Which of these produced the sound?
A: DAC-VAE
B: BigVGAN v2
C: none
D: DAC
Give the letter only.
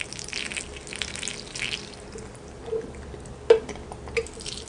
C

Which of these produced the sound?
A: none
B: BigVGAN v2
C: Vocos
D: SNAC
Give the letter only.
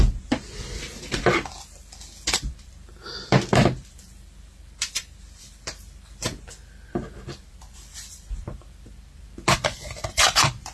B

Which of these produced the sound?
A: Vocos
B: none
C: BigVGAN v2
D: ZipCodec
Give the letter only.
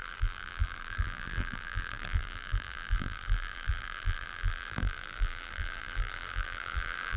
C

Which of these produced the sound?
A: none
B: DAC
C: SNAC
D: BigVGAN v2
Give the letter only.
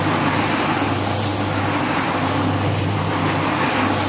A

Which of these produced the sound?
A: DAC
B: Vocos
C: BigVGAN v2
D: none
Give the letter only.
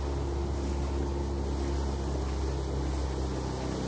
D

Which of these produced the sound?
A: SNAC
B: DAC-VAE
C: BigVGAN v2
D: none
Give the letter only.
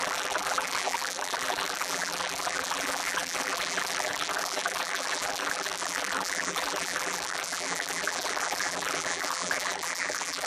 C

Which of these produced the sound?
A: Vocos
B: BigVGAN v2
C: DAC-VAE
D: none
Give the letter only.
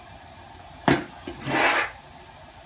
D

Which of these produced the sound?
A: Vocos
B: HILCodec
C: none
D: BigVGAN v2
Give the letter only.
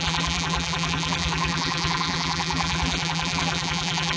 D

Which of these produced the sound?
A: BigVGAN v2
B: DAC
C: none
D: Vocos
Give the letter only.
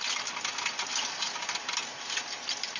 C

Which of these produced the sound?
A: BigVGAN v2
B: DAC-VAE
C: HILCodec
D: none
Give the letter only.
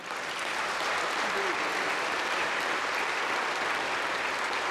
D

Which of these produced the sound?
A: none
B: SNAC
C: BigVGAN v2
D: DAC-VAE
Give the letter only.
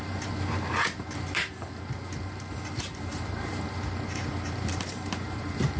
C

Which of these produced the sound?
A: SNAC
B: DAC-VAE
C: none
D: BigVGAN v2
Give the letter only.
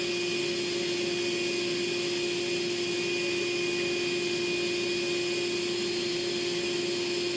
C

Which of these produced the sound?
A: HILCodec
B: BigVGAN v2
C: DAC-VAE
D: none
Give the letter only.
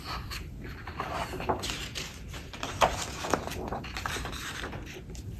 D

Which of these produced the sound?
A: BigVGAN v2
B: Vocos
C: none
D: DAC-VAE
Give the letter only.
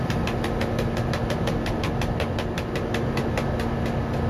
C